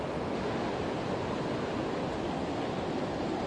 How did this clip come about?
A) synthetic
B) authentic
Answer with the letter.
B